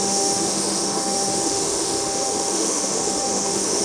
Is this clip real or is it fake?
fake